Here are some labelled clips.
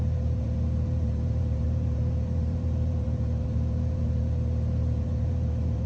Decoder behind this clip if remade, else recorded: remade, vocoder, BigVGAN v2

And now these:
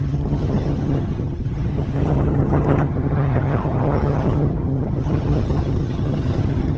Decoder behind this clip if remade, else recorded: remade, vocoder, HiFi-GAN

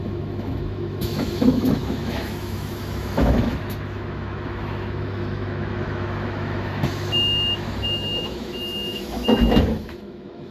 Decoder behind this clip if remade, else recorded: remade, autoencoder, DAC-VAE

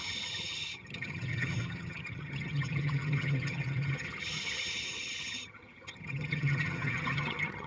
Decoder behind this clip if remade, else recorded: remade, vocoder, HiFi-GAN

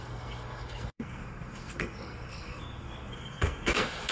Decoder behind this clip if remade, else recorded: remade, codec, SNAC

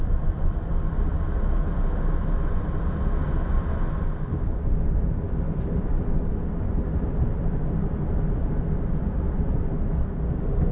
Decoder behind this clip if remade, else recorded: recorded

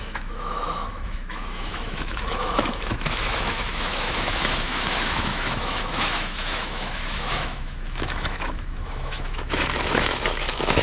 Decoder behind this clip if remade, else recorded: remade, autoencoder, DAC-VAE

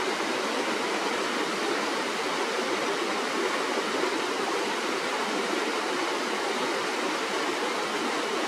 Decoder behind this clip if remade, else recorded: recorded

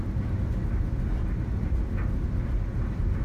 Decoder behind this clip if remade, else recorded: recorded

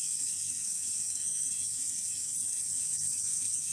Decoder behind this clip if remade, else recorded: remade, codec, SNAC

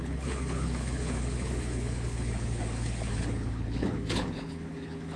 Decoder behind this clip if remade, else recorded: remade, codec, HILCodec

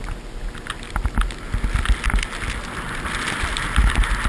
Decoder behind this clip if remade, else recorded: recorded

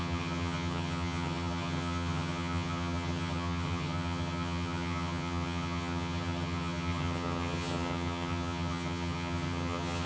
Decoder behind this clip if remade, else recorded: remade, vocoder, HiFi-GAN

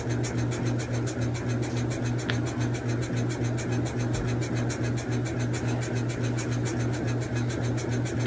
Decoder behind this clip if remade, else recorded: recorded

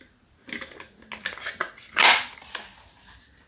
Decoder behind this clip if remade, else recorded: recorded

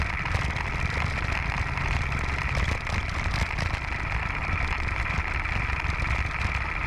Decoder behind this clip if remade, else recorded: recorded